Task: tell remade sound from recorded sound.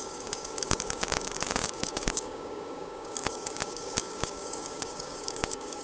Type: remade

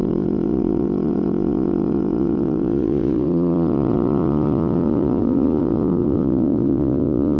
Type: remade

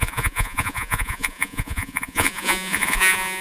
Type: remade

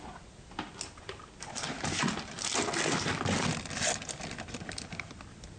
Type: recorded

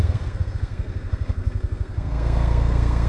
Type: remade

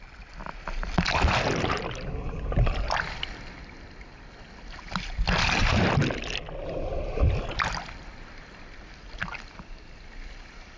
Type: recorded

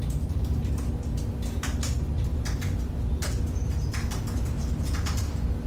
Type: recorded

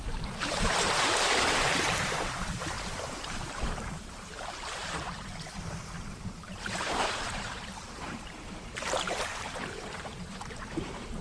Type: remade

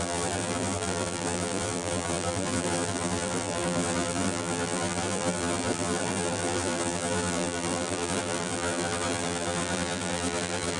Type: remade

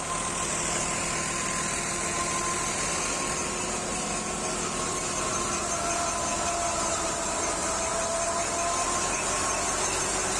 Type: recorded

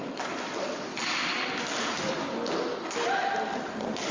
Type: recorded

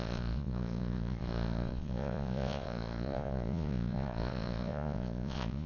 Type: remade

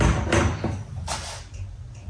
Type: recorded